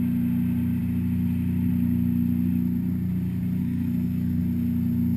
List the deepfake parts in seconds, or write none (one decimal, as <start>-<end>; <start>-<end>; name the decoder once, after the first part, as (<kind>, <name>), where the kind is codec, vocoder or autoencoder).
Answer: 3.6-4.4 (codec, SNAC)

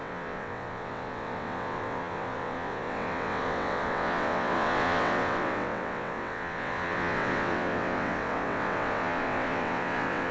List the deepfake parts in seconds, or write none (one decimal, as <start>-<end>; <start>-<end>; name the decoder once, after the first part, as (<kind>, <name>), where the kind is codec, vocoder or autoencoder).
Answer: 0.0-10.3 (vocoder, WaveNeXt)

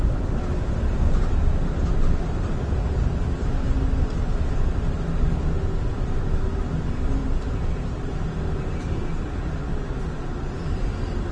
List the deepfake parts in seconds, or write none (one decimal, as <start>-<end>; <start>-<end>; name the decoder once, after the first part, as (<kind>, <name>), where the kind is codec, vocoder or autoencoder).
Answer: 7.2-8.1 (vocoder, BigVGAN v2)

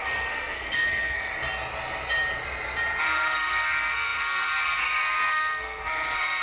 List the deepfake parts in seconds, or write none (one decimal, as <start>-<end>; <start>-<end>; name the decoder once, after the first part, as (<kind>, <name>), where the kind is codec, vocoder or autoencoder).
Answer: 0.0-1.3 (codec, SNAC); 3.0-6.4

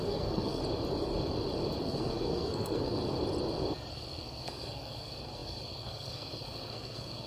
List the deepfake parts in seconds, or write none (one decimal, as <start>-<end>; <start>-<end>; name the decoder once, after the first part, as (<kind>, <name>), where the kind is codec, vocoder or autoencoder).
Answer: 0.0-0.6 (codec, SNAC); 1.8-3.0; 3.9-7.3